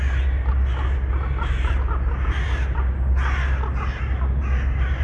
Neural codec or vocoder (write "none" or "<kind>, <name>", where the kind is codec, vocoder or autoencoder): none